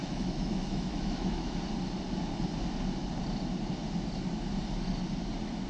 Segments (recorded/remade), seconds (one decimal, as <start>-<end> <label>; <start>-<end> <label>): 0.0-1.6 remade; 1.6-5.7 recorded